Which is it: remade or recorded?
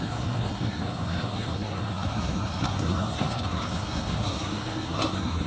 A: remade